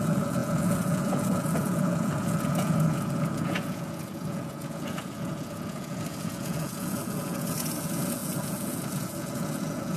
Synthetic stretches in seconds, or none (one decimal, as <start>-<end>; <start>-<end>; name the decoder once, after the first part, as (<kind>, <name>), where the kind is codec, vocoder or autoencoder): 0.0-10.0 (vocoder, Vocos)

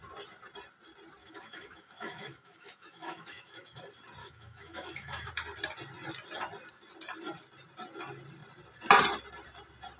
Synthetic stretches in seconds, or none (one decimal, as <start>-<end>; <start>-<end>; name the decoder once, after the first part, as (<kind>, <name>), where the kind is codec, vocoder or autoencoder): 1.2-3.8 (autoencoder, DAC-VAE); 4.2-5.3

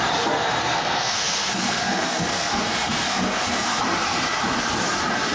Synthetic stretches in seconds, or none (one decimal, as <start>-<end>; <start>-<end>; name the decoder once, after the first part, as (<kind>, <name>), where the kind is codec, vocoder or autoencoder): 0.6-3.8 (codec, SNAC)

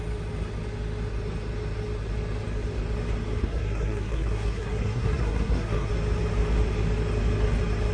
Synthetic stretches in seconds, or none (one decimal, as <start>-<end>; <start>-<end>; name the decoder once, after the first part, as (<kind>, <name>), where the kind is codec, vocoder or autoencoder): 3.4-5.9 (codec, SNAC)